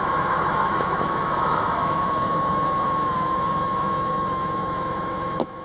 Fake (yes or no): yes